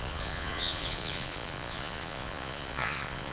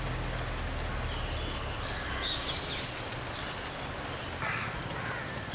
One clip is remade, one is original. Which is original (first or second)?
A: second